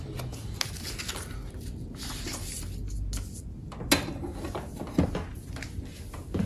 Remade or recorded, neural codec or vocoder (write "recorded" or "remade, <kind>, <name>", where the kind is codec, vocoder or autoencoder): recorded